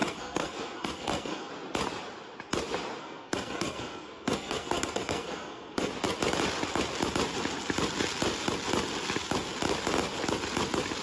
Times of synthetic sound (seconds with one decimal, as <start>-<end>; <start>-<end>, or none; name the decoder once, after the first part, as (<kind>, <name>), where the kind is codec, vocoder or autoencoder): 0.0-1.5 (codec, SNAC); 3.0-5.9